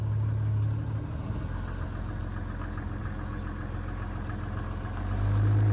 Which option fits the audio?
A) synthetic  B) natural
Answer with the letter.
B